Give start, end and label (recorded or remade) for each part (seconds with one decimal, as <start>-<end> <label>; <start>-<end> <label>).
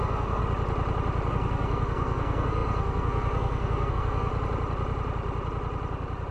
0.0-0.4 remade; 0.4-1.3 recorded; 1.3-4.3 remade; 4.3-6.3 recorded